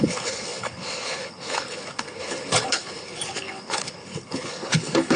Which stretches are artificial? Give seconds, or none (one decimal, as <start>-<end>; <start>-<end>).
0.0-5.2